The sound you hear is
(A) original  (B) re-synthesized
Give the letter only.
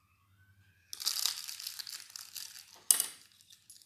A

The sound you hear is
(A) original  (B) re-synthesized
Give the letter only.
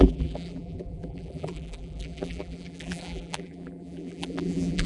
B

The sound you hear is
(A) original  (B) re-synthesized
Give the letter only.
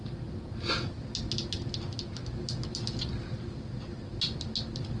A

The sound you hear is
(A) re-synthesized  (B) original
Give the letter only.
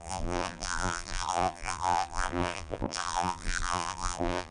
A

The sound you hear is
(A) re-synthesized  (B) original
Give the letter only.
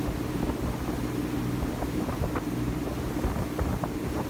B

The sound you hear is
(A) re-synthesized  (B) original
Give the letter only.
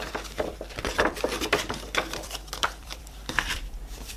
A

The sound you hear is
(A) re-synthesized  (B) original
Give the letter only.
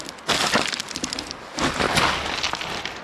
B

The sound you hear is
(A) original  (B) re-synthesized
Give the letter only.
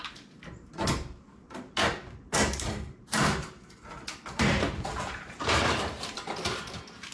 B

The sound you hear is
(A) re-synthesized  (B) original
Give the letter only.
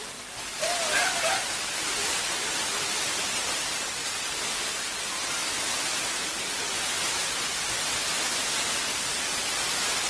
B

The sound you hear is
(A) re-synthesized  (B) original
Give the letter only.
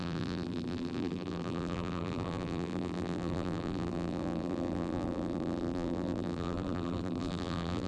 A